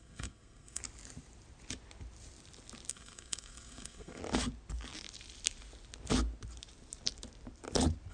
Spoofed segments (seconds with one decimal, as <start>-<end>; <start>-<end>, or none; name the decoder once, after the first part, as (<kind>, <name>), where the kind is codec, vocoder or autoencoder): 0.0-0.8 (codec, SNAC); 2.9-4.2